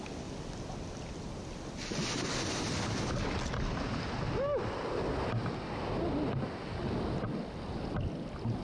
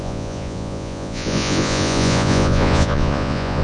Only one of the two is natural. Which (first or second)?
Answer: first